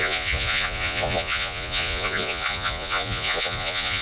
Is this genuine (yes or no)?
no